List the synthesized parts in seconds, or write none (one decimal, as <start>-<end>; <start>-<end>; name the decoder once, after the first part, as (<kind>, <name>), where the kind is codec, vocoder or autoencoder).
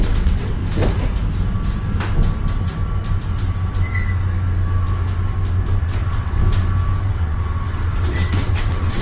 0.0-0.6 (vocoder, WaveNeXt); 5.8-6.4; 7.0-9.0